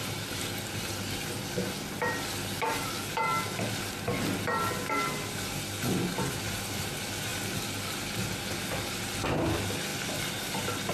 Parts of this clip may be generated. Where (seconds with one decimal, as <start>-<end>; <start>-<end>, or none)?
9.9-10.9